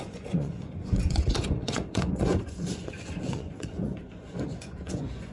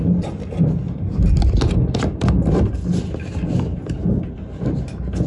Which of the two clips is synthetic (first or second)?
first